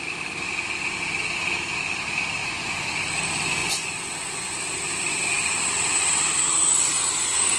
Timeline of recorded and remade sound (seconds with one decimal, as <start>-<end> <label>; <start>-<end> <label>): 0.0-2.4 recorded; 2.4-2.9 remade; 2.9-3.6 recorded; 3.6-4.6 remade; 4.6-7.6 recorded